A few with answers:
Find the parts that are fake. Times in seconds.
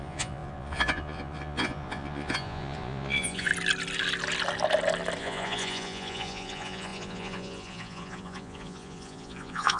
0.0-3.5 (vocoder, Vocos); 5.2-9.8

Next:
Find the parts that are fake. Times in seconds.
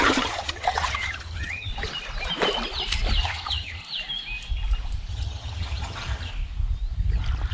0.0-1.7 (vocoder, HiFi-GAN); 3.2-3.8; 5.1-6.3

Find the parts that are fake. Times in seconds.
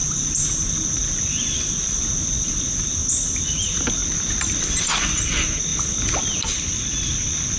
none